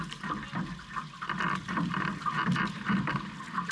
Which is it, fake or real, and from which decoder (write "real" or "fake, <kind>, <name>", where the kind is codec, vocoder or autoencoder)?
real